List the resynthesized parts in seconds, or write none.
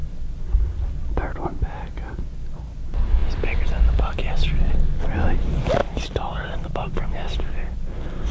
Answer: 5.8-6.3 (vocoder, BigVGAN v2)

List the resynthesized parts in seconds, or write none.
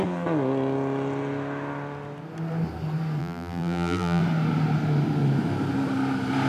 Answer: 3.2-4.2 (vocoder, BigVGAN v2)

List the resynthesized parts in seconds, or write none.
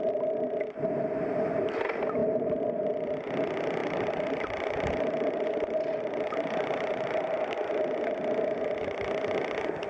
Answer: 2.2-2.9 (vocoder, BigVGAN v2); 3.8-7.4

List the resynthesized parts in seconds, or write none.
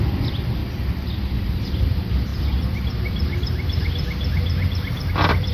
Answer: 0.0-0.6 (vocoder, BigVGAN v2); 1.2-5.5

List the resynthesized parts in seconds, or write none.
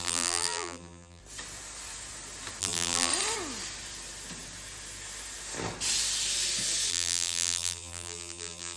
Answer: 0.0-1.2 (vocoder, BigVGAN v2); 2.6-3.1; 6.9-8.8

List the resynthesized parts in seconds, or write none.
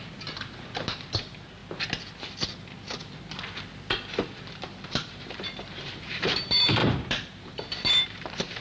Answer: 0.0-1.6 (vocoder, BigVGAN v2); 4.6-8.6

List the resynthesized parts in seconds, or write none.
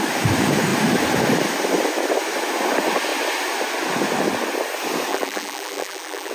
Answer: 5.1-6.3 (vocoder, BigVGAN v2)